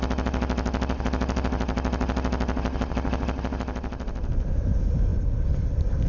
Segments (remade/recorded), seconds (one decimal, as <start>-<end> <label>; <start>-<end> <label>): 0.0-6.1 recorded